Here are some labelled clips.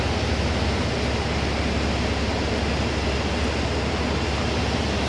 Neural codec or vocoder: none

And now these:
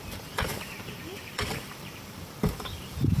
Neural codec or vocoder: vocoder, BigVGAN v2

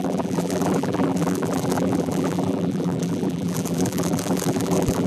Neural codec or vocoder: vocoder, BigVGAN v2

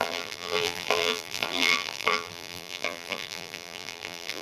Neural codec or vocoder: vocoder, BigVGAN v2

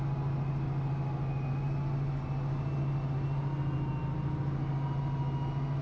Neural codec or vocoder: none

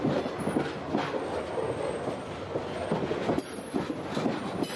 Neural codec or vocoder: none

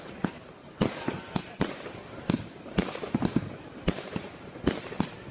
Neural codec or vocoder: vocoder, BigVGAN v2